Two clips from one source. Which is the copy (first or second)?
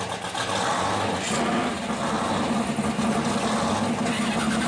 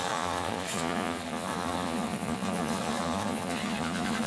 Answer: second